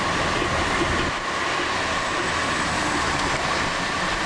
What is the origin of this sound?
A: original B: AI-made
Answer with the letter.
A